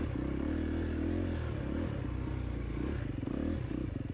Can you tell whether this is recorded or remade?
recorded